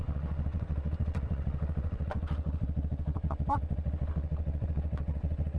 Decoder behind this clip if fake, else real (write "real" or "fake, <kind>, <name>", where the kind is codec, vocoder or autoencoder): fake, vocoder, WaveNeXt